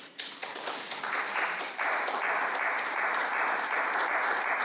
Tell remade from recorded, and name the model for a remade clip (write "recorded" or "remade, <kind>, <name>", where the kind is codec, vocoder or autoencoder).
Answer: recorded